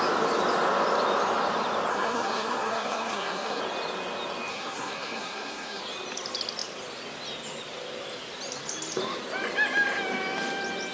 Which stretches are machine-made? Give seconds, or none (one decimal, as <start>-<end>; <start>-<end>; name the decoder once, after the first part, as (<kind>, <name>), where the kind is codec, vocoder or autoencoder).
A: 1.9-3.6 (codec, SNAC); 4.5-5.8